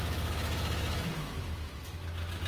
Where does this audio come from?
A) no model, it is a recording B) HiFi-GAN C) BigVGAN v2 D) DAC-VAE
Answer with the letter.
D